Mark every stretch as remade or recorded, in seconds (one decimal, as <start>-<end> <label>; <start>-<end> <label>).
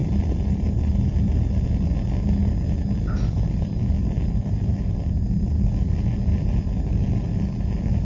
0.0-8.0 recorded